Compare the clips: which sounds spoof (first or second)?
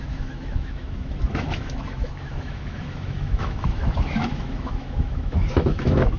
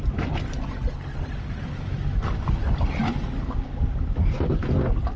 first